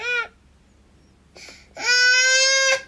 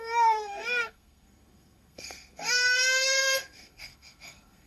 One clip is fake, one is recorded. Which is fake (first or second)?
second